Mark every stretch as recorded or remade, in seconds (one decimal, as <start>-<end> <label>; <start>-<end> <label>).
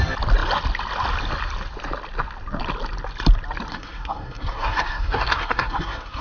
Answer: 0.0-3.7 recorded; 3.7-6.2 remade